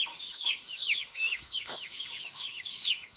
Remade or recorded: remade